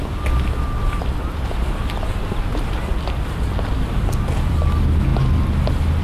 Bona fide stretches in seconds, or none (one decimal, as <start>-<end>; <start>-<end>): 0.0-6.0